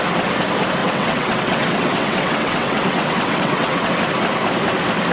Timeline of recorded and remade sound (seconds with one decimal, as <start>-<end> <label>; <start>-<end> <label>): 0.0-0.8 recorded; 0.8-3.9 remade; 3.9-5.1 recorded